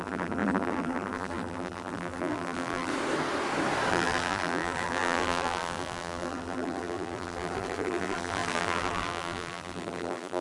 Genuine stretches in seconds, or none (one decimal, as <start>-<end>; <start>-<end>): 2.9-3.9